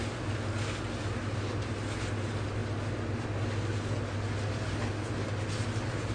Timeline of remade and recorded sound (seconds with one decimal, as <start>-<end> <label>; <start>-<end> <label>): 0.0-6.1 recorded